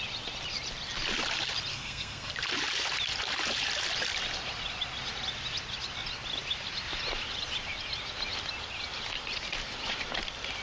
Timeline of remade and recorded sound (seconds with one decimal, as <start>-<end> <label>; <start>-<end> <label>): 0.0-1.7 recorded; 1.7-2.3 remade; 2.3-10.6 recorded